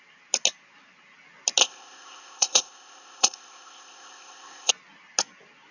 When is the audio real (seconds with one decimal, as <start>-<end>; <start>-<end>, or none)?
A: 0.0-1.6; 4.7-5.7